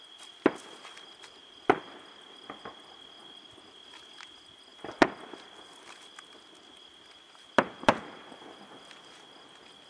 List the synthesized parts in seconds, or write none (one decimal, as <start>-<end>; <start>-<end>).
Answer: none